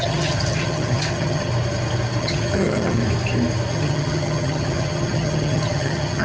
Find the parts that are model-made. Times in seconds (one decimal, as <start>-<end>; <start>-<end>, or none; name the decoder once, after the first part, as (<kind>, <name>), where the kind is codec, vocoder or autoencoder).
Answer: 0.0-1.5 (vocoder, HiFi-GAN); 2.2-3.0; 3.7-6.2